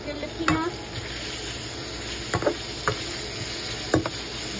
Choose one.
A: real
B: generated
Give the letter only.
A